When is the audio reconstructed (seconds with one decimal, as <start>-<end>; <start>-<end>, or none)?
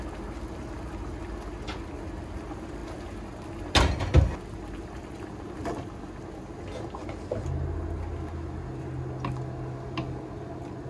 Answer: none